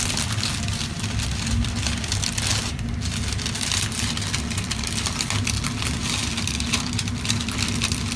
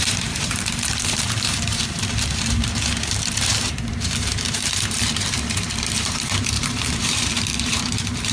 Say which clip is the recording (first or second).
first